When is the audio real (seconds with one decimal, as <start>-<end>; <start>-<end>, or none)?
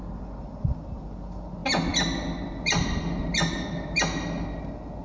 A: 0.0-5.0